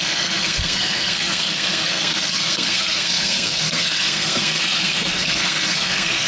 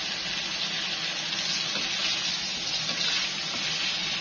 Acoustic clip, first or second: second